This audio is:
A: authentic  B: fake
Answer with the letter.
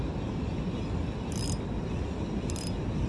A